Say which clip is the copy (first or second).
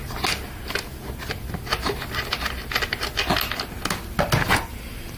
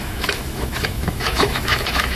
second